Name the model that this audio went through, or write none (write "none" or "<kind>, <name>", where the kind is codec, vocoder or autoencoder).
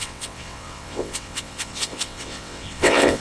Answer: vocoder, WaveNeXt